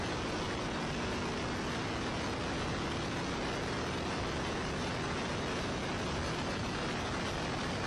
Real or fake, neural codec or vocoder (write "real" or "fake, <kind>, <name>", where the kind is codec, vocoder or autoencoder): fake, vocoder, BigVGAN v2